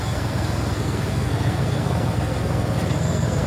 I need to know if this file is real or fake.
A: fake